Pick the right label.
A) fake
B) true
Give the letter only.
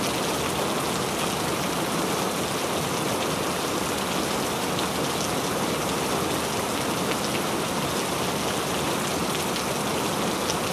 B